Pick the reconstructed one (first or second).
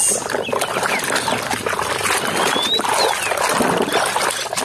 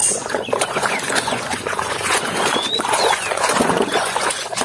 second